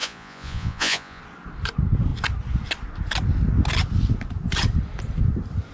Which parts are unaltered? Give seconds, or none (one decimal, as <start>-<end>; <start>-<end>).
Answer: 1.2-5.7